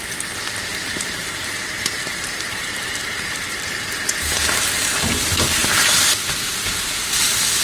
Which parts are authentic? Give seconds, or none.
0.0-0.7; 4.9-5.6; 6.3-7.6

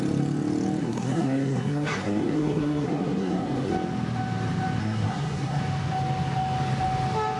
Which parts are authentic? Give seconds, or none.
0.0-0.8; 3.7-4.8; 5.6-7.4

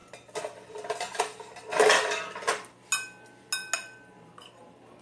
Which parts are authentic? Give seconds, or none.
0.0-5.0

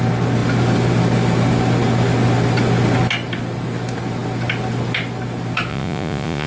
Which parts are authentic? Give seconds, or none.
0.0-5.7

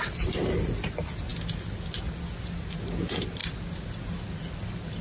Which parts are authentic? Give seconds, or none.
0.0-5.0

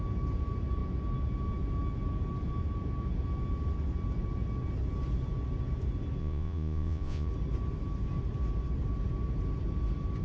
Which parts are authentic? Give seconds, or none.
0.0-6.2; 7.3-10.2